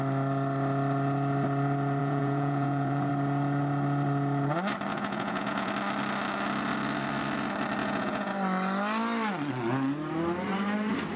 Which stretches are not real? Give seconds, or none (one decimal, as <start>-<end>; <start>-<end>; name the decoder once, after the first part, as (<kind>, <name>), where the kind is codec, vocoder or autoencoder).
2.0-3.1 (vocoder, Vocos); 4.9-5.7; 7.8-8.3